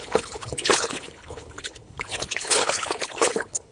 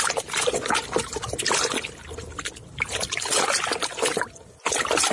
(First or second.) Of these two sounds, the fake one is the first